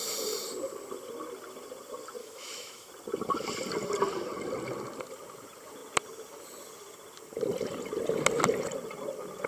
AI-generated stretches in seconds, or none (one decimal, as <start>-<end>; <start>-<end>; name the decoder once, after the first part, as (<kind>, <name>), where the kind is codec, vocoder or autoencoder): 2.2-2.9 (autoencoder, DAC-VAE)